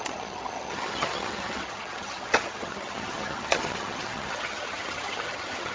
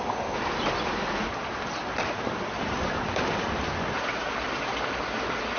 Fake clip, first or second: first